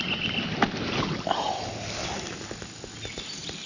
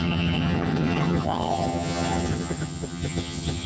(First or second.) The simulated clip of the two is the second